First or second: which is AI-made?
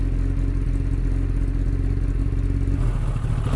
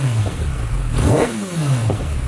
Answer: second